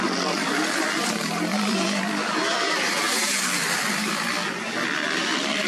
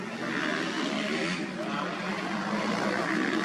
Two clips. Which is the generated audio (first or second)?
first